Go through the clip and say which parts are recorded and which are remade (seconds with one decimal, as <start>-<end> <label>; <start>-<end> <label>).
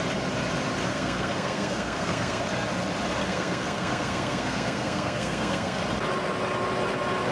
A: 0.0-0.9 recorded; 0.9-2.4 remade; 2.4-3.2 recorded; 3.2-5.8 remade; 5.8-7.3 recorded